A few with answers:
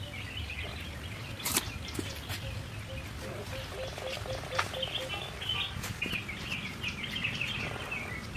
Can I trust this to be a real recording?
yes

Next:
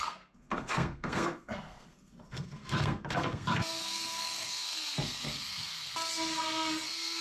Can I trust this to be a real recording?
no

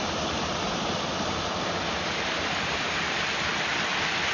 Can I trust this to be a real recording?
yes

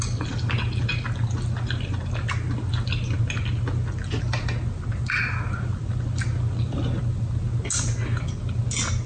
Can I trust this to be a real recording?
yes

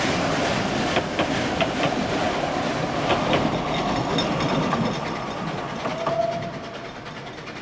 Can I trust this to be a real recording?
yes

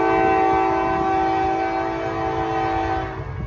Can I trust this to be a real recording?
yes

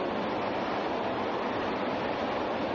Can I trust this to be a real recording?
yes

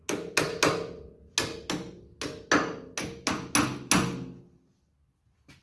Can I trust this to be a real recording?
yes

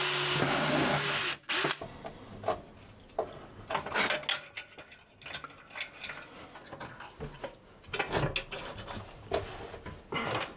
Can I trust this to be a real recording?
yes